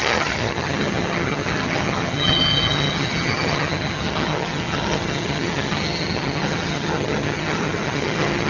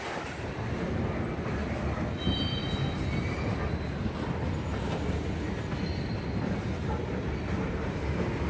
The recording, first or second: second